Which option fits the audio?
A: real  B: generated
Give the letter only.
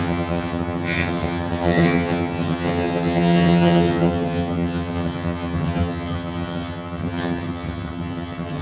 B